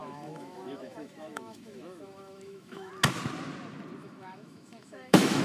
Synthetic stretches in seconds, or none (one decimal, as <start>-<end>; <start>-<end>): 0.0-2.9; 4.0-5.4